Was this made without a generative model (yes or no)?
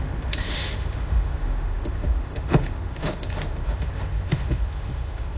no